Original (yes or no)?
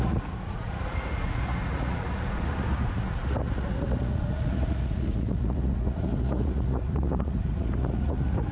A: no